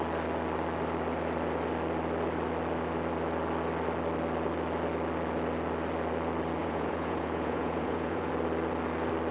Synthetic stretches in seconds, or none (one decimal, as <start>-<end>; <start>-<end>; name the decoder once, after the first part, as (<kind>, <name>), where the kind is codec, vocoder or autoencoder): 6.6-8.3 (vocoder, Vocos)